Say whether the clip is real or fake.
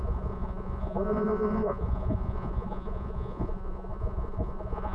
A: fake